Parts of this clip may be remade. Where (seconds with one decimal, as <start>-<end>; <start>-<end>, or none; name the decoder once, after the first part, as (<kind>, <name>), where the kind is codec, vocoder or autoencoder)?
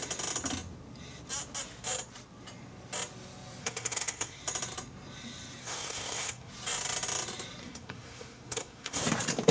3.6-4.4 (codec, SNAC); 5.6-6.5; 7.6-9.0